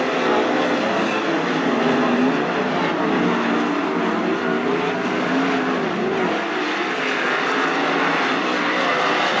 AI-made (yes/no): no